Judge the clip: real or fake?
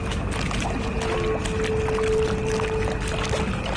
real